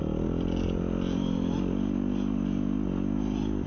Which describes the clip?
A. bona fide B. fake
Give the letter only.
A